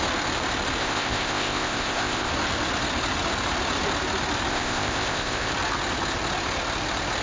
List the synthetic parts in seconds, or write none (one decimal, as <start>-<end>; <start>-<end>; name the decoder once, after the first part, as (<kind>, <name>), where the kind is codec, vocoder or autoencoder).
0.8-2.3 (codec, ZipCodec); 4.5-5.5